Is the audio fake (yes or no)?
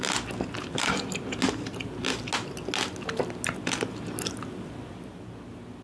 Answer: no